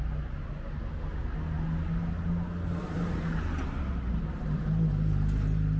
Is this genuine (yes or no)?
yes